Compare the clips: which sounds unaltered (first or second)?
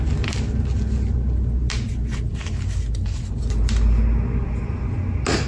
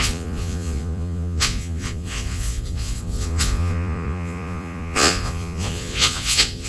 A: first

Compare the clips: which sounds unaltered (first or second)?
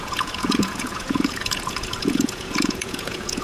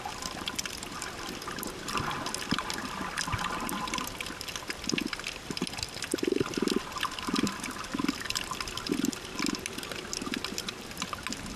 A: second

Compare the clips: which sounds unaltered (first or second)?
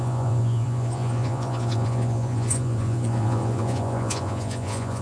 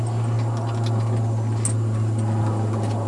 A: second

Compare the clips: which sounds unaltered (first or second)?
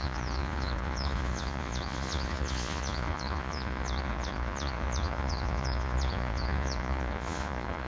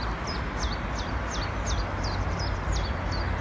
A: second